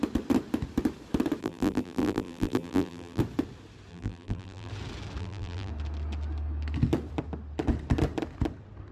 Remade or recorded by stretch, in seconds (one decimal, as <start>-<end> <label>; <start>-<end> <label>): 0.0-1.4 recorded; 1.4-3.2 remade; 3.2-3.9 recorded; 3.9-4.7 remade; 4.7-5.2 recorded; 5.2-5.7 remade; 5.7-8.9 recorded